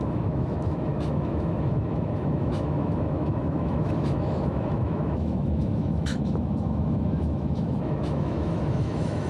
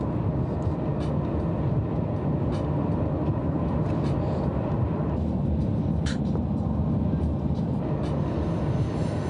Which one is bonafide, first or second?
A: second